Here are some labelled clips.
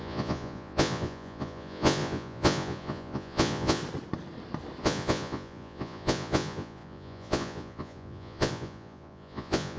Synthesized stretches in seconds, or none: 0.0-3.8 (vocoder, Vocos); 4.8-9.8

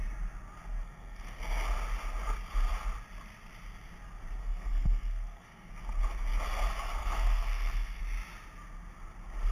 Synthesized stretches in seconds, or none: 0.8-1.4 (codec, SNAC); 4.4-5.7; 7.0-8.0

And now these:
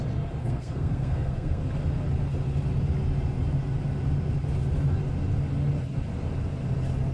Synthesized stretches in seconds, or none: 0.4-1.6 (codec, SNAC)

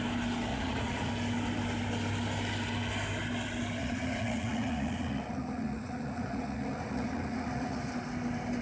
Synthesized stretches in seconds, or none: 0.5-1.1 (vocoder, Vocos); 3.8-7.9

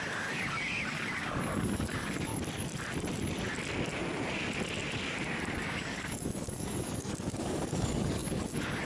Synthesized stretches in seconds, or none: 0.0-2.3 (codec, DAC); 5.6-8.8

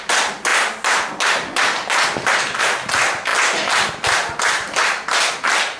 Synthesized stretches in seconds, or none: none

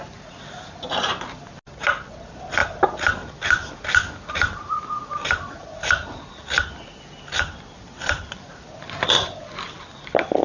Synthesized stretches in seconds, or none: none

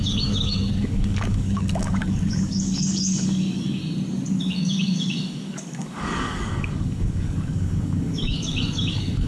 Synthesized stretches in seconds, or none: 0.0-3.8 (codec, DAC); 4.4-9.3